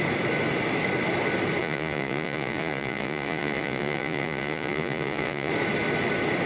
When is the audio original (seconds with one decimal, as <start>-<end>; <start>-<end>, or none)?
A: 0.0-1.6; 5.5-6.5